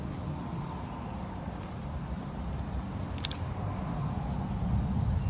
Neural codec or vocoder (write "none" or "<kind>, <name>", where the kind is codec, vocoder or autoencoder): none